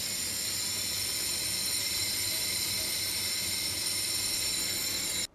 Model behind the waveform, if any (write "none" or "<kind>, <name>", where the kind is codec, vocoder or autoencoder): none